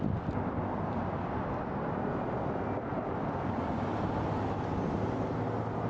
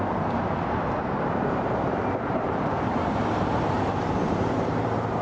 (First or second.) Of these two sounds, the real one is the first